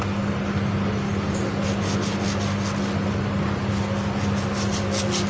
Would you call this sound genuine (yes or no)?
yes